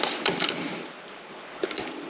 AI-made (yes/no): no